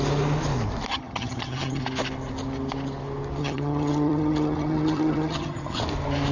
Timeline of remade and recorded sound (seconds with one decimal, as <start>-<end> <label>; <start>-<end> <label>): 0.0-0.9 recorded; 0.9-1.8 remade; 1.8-3.4 recorded; 3.4-5.8 remade; 5.8-6.3 recorded